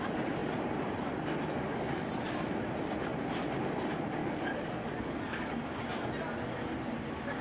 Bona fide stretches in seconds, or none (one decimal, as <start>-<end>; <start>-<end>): 0.0-1.5; 2.1-4.2; 5.6-7.4